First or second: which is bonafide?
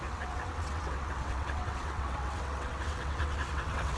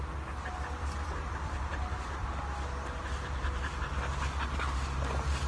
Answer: second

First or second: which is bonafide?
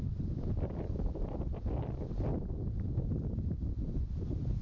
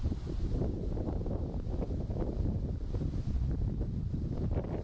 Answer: first